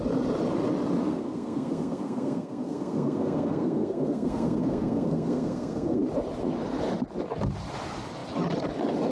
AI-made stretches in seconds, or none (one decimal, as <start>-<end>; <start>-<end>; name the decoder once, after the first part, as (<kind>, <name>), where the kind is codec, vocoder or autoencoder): 1.0-6.0 (codec, SNAC)